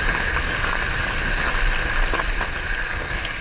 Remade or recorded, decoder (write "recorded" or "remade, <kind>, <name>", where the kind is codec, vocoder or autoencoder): recorded